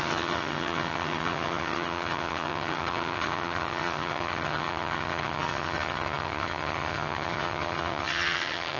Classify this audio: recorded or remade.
remade